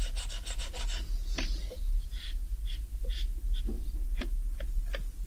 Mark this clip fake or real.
real